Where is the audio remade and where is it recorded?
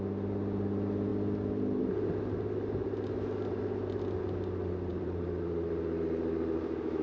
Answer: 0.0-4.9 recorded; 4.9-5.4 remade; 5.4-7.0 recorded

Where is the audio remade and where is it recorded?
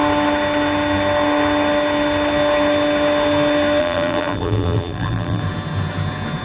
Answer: 0.0-3.8 recorded; 3.8-5.4 remade; 5.4-6.4 recorded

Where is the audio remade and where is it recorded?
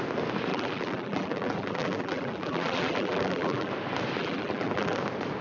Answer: 0.0-0.5 recorded; 0.5-3.7 remade; 3.7-4.2 recorded; 4.2-5.0 remade; 5.0-5.4 recorded